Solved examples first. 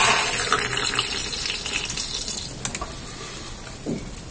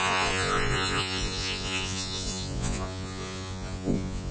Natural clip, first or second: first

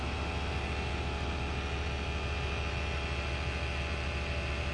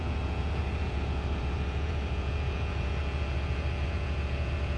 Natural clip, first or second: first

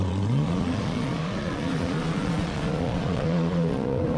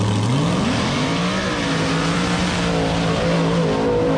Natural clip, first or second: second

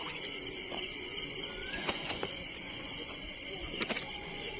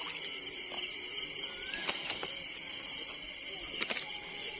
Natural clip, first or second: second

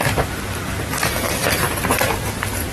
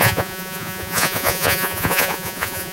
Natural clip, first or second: first